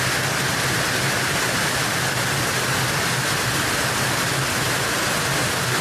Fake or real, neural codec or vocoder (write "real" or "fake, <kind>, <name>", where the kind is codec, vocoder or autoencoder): real